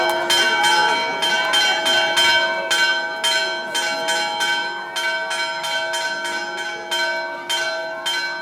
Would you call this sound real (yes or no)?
yes